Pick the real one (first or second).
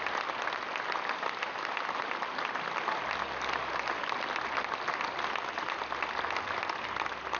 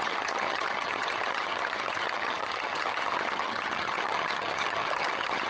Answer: first